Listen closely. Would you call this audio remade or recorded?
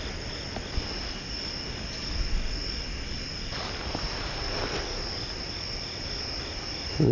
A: recorded